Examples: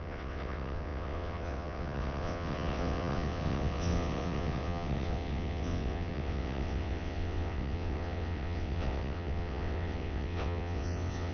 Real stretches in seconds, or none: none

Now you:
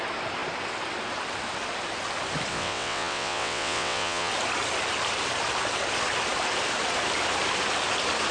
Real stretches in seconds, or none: 0.0-2.5; 4.3-8.3

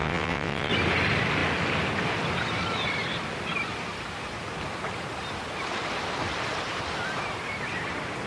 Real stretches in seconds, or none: 0.7-8.3

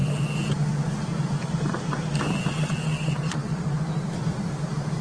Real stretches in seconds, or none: 0.0-2.5; 3.5-5.0

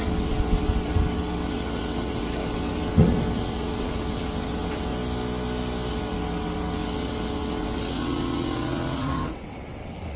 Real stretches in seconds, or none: 4.9-5.9